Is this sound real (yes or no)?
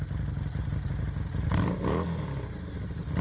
yes